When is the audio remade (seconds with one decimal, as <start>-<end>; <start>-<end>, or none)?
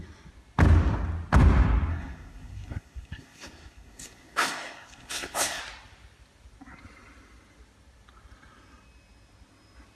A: 1.9-5.6